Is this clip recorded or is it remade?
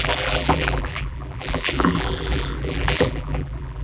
remade